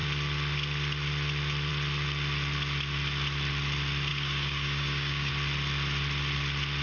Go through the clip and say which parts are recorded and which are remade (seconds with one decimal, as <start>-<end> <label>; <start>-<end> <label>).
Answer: 0.0-4.1 recorded; 4.1-5.3 remade; 5.3-6.8 recorded